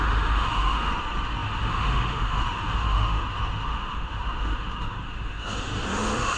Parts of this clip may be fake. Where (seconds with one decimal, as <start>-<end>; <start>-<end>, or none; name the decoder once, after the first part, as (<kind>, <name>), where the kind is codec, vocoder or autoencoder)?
0.0-6.4 (autoencoder, DAC-VAE)